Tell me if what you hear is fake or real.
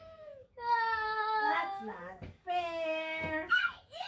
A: fake